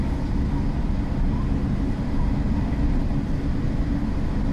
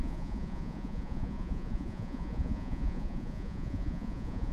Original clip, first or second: first